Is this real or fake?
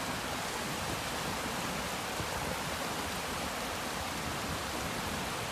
real